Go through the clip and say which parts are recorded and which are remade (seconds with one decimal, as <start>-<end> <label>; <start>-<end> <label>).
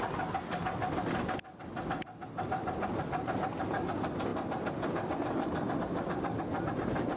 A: 0.0-7.2 recorded